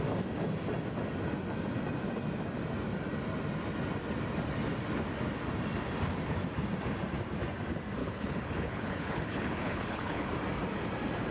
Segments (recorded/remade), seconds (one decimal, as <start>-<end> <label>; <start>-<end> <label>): 0.0-8.0 recorded; 8.0-10.3 remade; 10.3-11.3 recorded